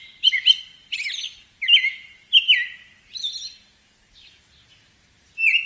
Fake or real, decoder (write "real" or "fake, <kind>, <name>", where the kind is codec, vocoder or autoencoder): real